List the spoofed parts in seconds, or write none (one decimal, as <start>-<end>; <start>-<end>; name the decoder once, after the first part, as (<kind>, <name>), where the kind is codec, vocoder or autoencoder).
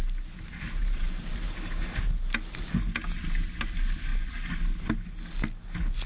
0.8-2.0 (vocoder, BigVGAN v2)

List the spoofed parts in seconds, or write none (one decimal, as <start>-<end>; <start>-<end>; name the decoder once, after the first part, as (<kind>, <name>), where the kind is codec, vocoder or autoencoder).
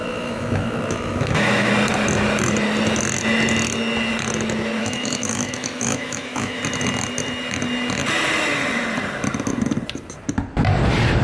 0.0-1.7 (autoencoder, DAC-VAE); 4.8-6.6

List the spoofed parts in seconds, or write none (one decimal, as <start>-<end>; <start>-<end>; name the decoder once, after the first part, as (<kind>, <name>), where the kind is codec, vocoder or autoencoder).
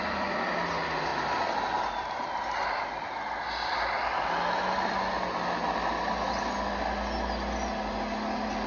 none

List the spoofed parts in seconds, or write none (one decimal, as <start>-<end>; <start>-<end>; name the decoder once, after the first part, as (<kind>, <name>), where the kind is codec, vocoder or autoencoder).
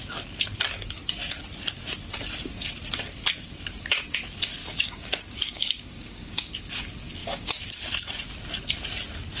4.6-6.7 (codec, DAC); 7.2-7.7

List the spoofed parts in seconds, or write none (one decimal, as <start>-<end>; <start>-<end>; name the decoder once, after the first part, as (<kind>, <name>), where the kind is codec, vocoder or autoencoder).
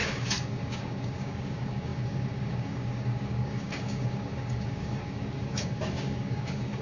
0.0-6.8 (codec, DAC)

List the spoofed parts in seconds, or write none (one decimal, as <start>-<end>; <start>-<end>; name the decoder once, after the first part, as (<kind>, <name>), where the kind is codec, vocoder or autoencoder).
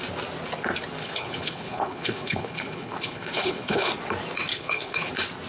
1.0-3.9 (codec, HILCodec); 4.5-5.1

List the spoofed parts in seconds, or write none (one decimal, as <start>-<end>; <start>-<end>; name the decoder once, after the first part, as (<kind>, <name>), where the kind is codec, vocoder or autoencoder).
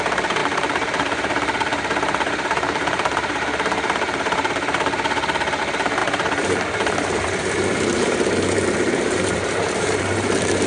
0.0-10.7 (vocoder, BigVGAN v2)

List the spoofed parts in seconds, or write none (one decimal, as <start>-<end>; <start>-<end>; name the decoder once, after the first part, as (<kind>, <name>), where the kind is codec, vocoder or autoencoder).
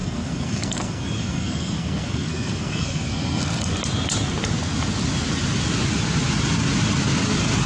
0.0-3.7 (codec, SNAC)